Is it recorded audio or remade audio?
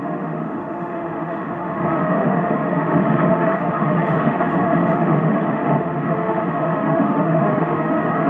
remade